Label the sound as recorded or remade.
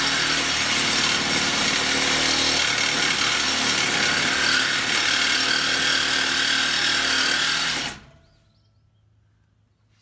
recorded